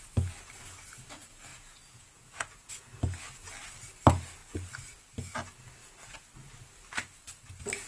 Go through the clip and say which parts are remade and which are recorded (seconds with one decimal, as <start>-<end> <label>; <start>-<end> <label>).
0.0-1.5 recorded; 1.5-3.0 remade; 3.0-7.9 recorded